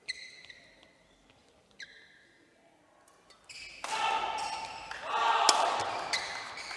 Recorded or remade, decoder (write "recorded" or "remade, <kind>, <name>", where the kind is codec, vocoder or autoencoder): recorded